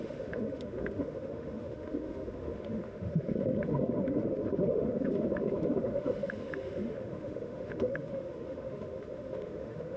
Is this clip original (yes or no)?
no